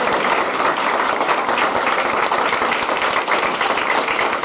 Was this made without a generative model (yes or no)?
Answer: yes